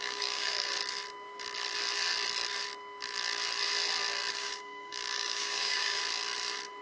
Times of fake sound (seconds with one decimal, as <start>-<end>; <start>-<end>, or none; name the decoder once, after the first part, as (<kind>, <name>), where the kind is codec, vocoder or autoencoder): 0.0-0.8 (codec, DAC); 4.3-6.0